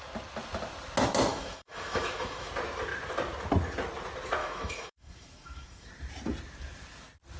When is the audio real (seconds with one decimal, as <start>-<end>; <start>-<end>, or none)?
0.0-1.3; 2.5-4.4; 5.9-7.4